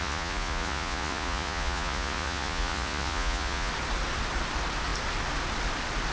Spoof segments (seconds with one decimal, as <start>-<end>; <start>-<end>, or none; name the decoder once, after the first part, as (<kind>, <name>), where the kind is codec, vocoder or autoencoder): 0.0-3.7 (vocoder, Vocos)